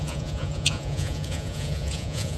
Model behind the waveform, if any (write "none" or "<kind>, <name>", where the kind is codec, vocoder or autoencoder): vocoder, Vocos